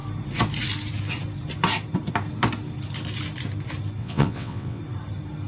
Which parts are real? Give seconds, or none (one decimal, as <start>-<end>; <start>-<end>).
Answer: 0.0-4.0; 4.8-5.5